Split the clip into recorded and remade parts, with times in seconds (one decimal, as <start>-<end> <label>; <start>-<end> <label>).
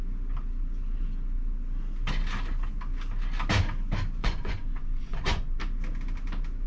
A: 0.0-4.2 recorded; 4.2-5.6 remade; 5.6-6.7 recorded